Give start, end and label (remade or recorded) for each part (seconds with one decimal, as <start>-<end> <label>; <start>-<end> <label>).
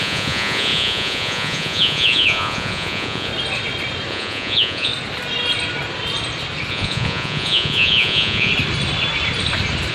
0.0-3.3 remade; 3.3-4.1 recorded; 4.1-4.9 remade; 4.9-6.7 recorded; 6.7-8.5 remade; 8.5-9.9 recorded